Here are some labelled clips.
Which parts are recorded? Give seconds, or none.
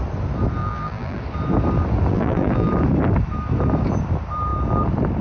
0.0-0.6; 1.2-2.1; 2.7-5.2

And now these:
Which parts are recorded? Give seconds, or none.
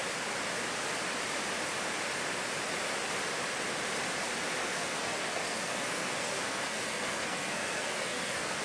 0.0-4.6